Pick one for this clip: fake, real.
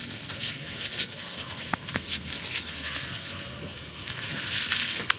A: fake